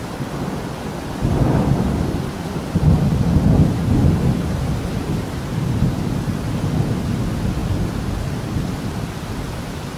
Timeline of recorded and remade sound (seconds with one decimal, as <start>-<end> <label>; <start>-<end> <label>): 0.0-10.0 recorded

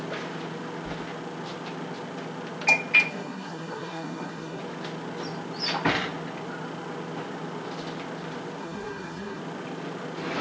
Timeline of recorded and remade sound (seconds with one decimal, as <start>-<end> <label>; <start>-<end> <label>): 0.0-3.1 recorded; 3.1-4.6 remade; 4.6-8.6 recorded; 8.6-9.4 remade; 9.4-10.4 recorded

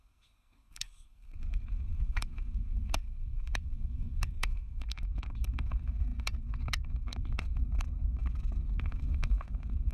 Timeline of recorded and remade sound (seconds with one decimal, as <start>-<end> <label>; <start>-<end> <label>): 0.0-9.9 remade

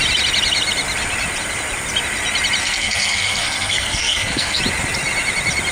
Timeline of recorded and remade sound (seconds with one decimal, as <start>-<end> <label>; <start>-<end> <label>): 0.0-2.6 recorded; 2.6-4.6 remade; 4.6-5.7 recorded

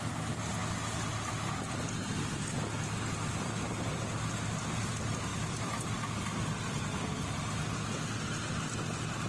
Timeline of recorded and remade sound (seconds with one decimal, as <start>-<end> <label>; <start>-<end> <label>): 0.0-9.3 recorded

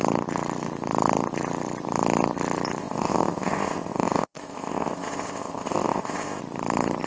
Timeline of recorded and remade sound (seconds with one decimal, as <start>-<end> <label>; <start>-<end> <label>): 0.0-2.8 recorded; 2.8-6.4 remade; 6.4-7.1 recorded

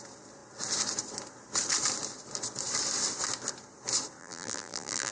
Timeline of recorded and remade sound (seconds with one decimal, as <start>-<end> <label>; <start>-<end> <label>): 0.0-4.2 recorded; 4.2-5.1 remade